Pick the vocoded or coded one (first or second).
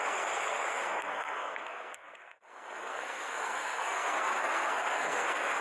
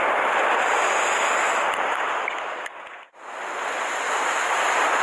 first